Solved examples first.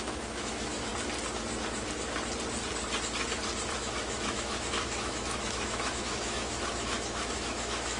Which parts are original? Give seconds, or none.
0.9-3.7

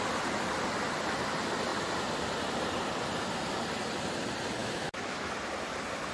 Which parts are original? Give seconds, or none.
0.0-4.6; 5.3-6.1

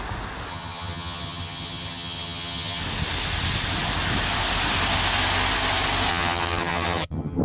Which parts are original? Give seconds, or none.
0.0-0.5; 2.8-6.1

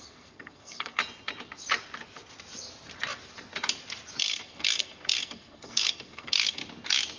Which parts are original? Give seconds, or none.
1.0-4.2; 6.6-7.2

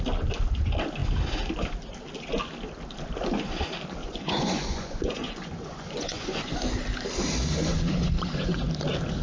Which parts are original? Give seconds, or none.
0.0-4.0; 6.5-7.7; 8.7-9.2

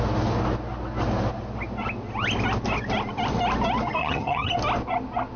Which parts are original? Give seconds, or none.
0.0-4.0; 4.5-5.4

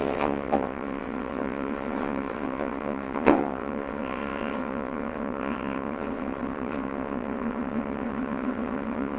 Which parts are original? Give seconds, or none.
none

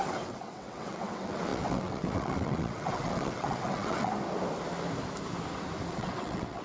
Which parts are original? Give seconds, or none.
4.1-5.9